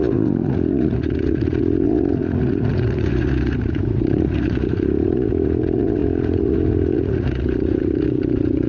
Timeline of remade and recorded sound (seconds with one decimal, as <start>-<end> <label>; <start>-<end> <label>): 0.0-8.7 remade